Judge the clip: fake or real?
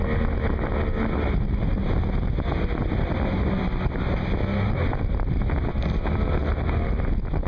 real